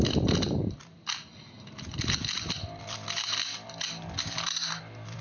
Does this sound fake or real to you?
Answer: real